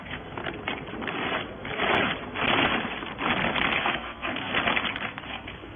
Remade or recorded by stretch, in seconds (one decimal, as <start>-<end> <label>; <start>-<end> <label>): 0.0-0.4 remade; 0.4-3.8 recorded; 3.8-4.5 remade; 4.5-5.3 recorded; 5.3-5.8 remade